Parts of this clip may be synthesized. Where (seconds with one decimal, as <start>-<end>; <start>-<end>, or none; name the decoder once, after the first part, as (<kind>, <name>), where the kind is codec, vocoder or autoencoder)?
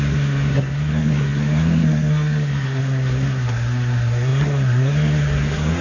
0.0-5.8 (codec, SNAC)